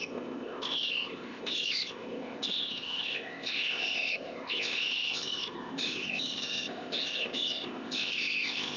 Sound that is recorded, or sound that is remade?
remade